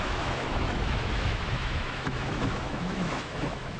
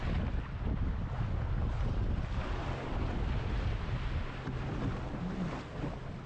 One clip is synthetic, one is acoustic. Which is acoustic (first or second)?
second